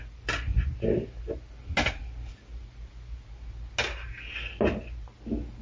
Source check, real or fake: real